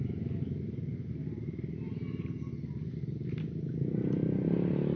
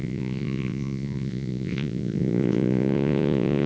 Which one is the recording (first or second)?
first